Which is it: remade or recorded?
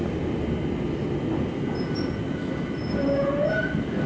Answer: recorded